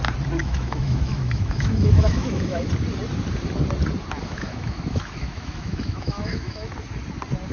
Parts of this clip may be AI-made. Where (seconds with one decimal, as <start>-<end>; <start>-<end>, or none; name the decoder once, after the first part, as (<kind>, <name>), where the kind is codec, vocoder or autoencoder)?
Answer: 0.4-2.7 (autoencoder, DAC-VAE); 4.2-6.7